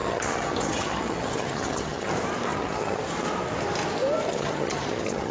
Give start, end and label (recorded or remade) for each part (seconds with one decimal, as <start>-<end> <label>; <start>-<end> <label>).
0.0-2.1 remade; 2.1-2.5 recorded; 2.5-3.0 remade; 3.0-4.3 recorded; 4.3-5.3 remade